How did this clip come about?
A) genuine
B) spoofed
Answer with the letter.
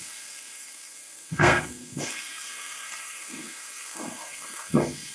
B